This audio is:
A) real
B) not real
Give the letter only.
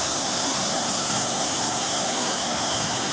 B